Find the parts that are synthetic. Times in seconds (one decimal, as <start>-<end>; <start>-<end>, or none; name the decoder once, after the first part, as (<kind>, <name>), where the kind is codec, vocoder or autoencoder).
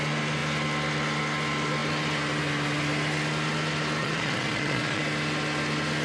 4.0-5.0 (vocoder, Vocos)